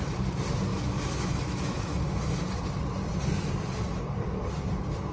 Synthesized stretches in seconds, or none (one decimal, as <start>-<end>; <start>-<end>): 0.7-2.2